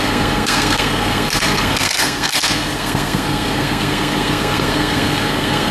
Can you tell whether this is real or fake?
fake